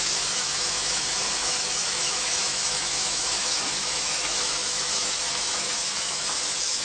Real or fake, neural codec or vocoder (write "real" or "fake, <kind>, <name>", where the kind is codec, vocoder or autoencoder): fake, autoencoder, DAC-VAE